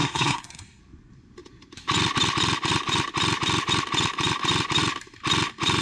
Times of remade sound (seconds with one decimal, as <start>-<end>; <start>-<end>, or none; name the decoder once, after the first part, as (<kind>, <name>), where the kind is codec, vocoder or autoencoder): 0.0-0.8 (codec, SNAC)